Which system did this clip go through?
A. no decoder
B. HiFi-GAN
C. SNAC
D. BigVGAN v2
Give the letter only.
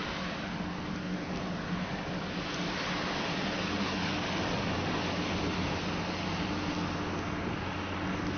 A